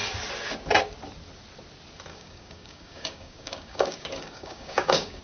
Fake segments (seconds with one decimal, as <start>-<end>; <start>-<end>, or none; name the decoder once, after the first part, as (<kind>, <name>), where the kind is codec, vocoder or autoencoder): 2.1-5.2 (codec, DAC)